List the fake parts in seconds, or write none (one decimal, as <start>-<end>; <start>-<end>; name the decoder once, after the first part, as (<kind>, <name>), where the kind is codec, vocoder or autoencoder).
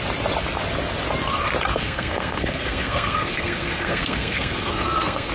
1.7-5.3 (codec, SNAC)